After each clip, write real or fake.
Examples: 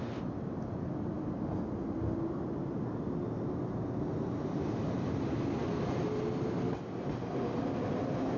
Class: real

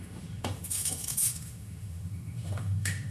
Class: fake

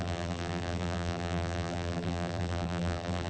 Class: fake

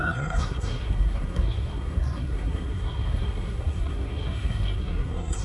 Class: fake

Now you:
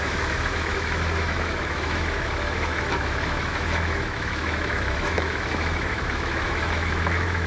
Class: fake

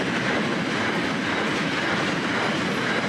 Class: real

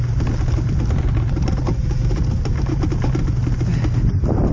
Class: real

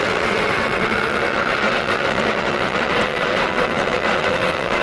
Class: fake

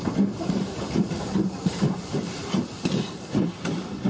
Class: fake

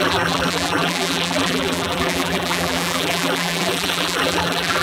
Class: fake